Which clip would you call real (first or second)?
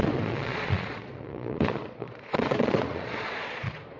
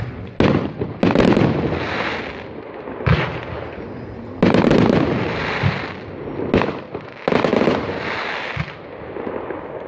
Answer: second